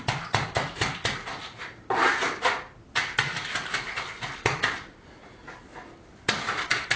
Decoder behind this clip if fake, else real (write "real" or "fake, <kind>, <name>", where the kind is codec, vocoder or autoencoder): real